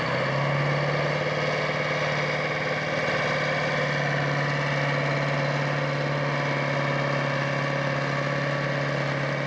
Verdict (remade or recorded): recorded